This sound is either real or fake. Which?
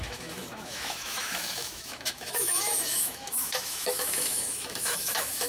fake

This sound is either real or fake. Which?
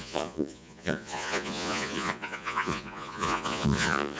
fake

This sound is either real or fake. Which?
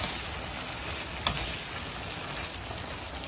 real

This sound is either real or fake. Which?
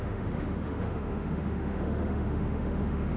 fake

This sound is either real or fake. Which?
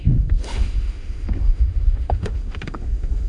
fake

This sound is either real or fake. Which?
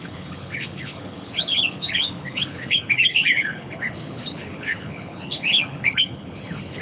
fake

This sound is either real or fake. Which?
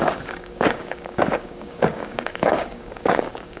fake